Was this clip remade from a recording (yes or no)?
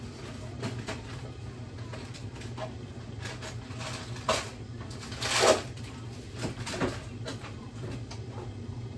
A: no